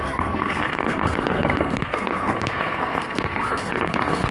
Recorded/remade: remade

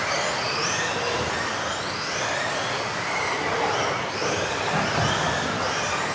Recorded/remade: recorded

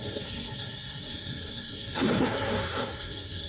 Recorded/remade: remade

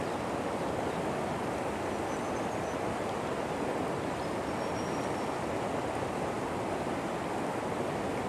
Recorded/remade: recorded